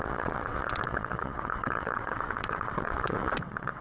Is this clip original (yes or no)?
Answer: no